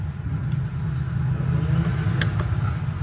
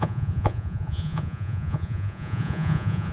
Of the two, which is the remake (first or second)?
second